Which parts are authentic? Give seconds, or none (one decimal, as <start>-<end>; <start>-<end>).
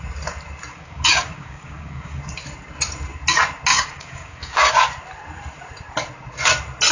0.0-0.7; 2.2-3.7; 4.7-6.9